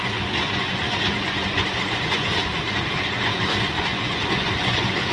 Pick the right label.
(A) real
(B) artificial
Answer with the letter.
B